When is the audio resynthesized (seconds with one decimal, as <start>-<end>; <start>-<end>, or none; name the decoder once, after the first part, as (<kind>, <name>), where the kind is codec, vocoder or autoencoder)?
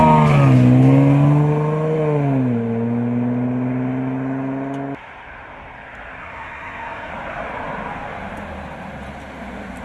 6.2-7.1 (codec, SNAC)